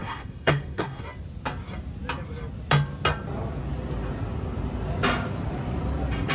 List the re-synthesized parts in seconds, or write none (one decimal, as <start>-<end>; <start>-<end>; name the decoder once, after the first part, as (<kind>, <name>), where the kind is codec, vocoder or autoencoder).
0.0-1.0 (codec, SNAC)